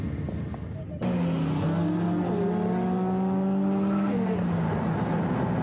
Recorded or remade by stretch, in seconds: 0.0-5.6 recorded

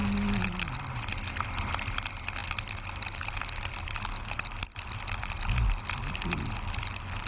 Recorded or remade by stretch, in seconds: 0.0-7.3 recorded

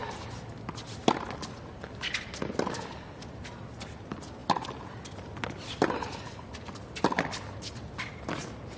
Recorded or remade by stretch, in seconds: 0.0-8.8 recorded